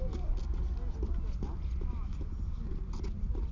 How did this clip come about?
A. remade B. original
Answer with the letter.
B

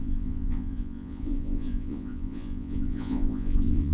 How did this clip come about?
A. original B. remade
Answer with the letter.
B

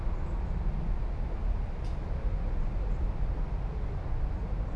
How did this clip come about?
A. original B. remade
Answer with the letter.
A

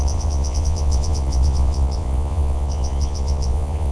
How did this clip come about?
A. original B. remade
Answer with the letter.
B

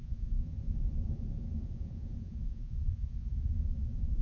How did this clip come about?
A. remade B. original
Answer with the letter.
A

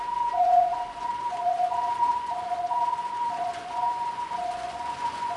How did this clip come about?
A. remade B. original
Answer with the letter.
A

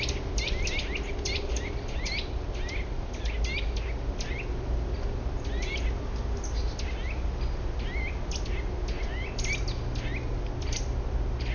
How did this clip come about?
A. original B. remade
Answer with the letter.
A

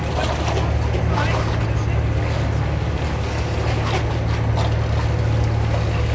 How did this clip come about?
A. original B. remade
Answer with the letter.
A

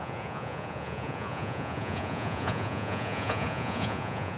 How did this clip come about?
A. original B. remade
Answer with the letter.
B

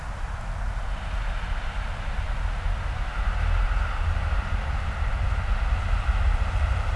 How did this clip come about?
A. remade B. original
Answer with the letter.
B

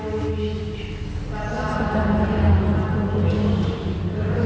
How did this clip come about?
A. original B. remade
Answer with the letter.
A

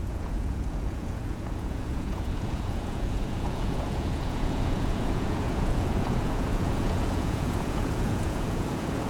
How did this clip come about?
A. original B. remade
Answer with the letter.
B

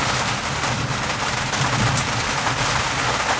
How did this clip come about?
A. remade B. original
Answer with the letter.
B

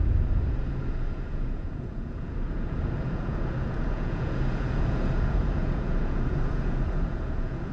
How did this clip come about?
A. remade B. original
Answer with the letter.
A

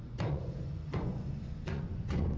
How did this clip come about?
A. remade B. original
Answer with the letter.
A